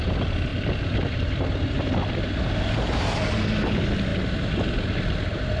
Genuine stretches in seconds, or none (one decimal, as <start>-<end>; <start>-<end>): 0.0-0.5; 3.2-4.1